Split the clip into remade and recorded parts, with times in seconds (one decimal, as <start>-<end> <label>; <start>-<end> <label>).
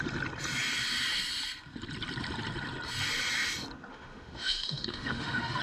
0.0-3.9 recorded; 3.9-5.6 remade